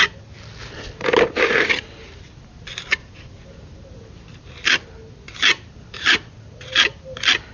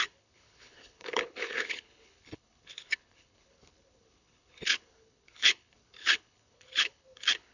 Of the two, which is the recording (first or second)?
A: first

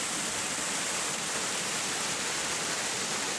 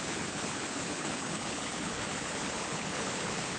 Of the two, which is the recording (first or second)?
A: first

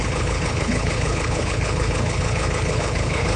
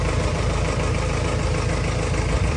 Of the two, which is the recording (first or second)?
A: second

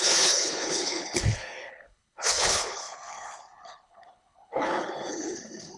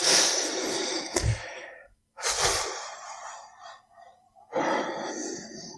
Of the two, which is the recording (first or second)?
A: second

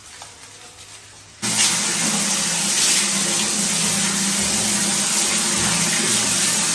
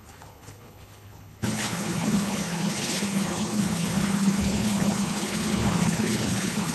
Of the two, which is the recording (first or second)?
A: first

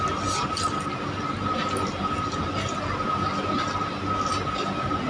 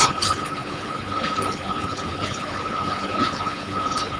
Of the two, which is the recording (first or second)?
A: first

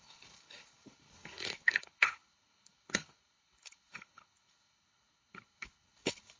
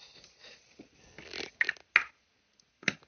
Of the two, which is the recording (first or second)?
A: second